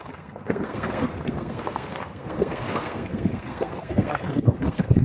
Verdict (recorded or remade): remade